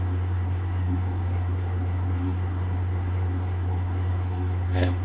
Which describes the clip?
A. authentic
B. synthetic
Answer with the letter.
B